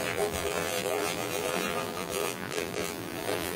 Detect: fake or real fake